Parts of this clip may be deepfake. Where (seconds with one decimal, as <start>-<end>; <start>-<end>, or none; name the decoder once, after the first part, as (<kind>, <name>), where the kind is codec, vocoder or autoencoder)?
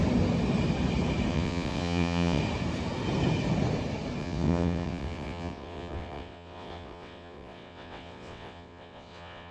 1.3-2.4 (vocoder, WaveNeXt); 4.2-9.5